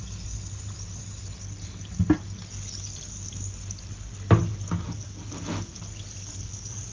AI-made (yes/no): no